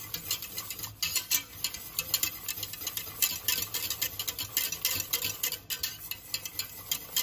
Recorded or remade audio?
recorded